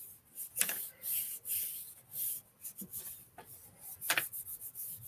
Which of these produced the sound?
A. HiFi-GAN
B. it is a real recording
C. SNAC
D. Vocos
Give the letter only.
B